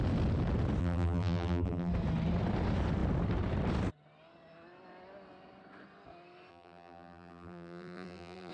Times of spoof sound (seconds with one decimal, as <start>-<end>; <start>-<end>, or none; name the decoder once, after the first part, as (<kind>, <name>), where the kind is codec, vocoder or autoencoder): 0.8-1.9 (vocoder, BigVGAN v2); 6.5-8.5

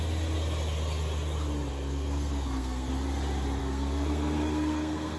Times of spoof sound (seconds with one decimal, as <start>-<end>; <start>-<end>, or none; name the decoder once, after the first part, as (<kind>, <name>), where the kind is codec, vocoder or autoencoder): 1.7-2.9 (codec, SNAC); 3.6-5.2

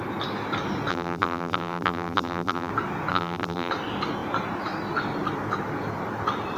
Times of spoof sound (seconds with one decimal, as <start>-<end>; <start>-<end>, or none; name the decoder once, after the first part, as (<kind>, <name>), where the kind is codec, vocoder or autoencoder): 0.9-2.7 (vocoder, BigVGAN v2); 3.1-3.7

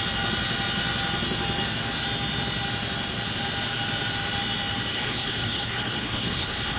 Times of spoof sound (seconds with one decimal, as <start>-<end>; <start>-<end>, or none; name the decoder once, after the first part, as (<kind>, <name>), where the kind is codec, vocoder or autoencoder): 4.9-6.8 (codec, HILCodec)

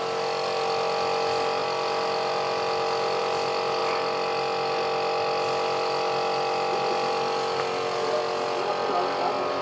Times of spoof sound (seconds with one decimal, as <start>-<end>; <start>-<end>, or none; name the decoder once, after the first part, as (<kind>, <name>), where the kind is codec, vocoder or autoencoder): none

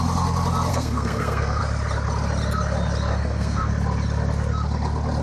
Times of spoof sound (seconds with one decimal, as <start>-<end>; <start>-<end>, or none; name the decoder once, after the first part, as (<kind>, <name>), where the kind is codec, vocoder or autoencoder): 0.7-1.6 (codec, SNAC); 3.1-3.7

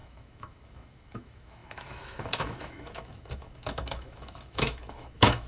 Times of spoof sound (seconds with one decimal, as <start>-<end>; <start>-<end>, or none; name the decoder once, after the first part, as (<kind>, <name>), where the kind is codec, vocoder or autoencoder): 0.0-5.5 (autoencoder, DAC-VAE)

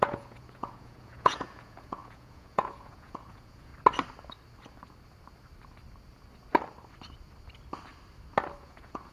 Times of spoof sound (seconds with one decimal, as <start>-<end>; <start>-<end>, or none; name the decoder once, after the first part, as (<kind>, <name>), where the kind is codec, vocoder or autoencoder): 0.0-3.7 (vocoder, Vocos); 8.6-9.1